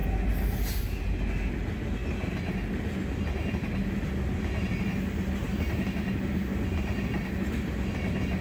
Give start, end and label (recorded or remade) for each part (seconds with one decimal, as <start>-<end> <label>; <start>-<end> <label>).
0.0-8.4 recorded